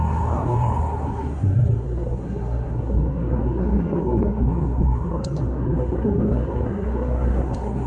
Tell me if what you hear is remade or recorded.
remade